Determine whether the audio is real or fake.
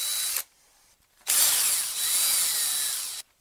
real